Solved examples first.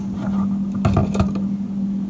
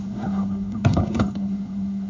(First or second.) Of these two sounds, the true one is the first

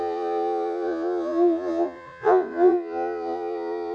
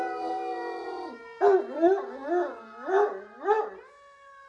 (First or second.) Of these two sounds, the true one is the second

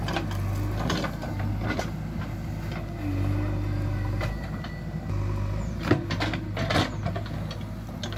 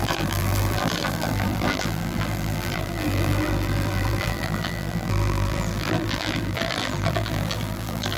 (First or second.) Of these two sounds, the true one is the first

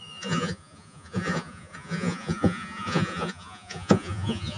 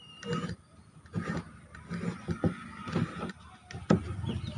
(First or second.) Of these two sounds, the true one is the second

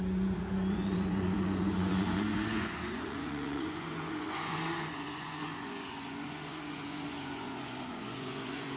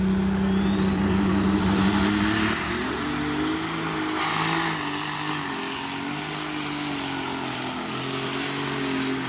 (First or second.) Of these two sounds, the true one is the second